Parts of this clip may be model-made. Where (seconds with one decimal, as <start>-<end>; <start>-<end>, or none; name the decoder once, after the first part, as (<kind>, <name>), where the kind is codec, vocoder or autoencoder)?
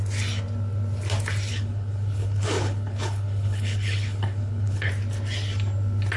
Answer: 1.5-4.9 (codec, HILCodec)